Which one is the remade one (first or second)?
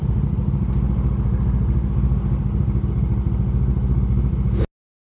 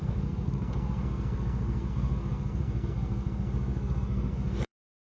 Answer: second